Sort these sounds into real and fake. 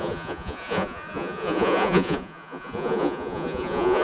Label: fake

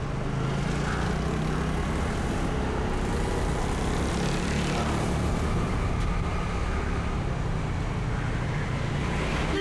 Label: real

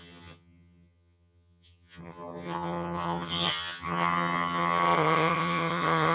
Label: fake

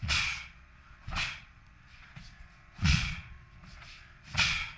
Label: fake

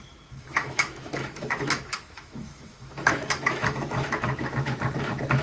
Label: fake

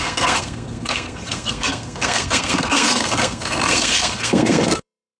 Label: fake